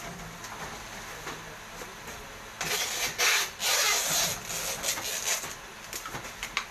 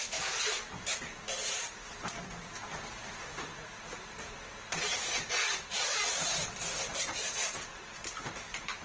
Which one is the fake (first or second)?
second